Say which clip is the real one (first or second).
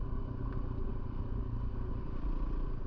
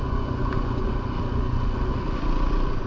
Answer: first